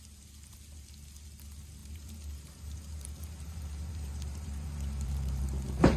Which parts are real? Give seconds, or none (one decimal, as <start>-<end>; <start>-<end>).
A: 0.0-1.8; 5.4-6.0